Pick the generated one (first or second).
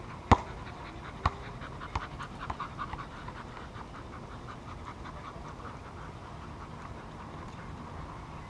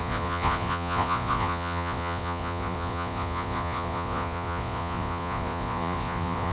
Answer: second